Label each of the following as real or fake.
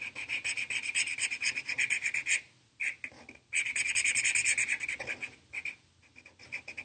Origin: real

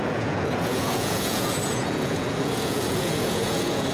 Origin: fake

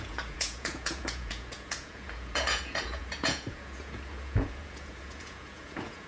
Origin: fake